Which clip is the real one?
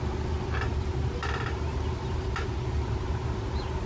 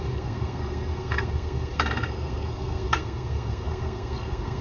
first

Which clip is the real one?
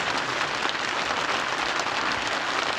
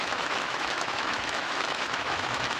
first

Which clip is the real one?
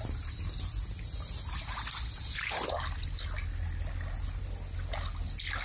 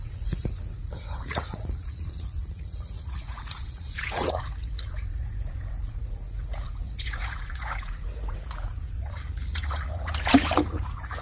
first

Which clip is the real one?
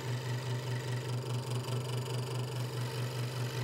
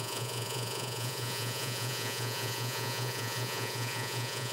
first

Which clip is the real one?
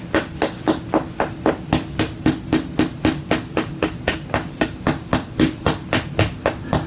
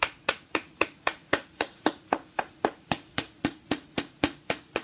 first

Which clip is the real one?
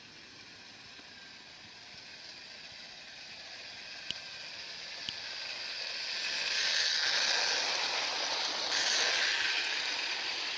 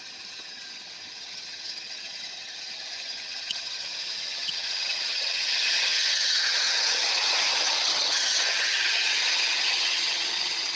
first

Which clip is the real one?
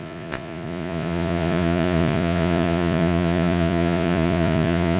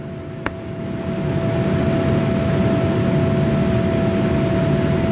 second